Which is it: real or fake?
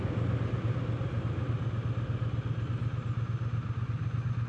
real